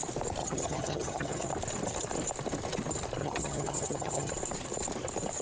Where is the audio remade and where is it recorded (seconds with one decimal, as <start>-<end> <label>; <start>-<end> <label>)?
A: 0.0-0.4 recorded; 0.4-1.5 remade; 1.5-3.2 recorded; 3.2-4.3 remade; 4.3-5.4 recorded